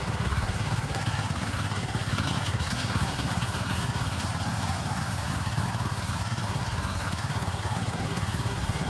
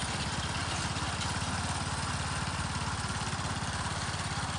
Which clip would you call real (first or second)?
second